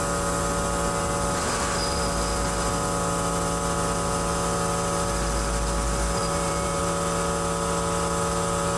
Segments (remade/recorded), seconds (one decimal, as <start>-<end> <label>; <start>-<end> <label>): 0.0-6.2 recorded; 6.2-6.8 remade; 6.8-8.8 recorded